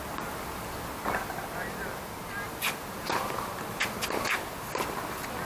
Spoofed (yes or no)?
no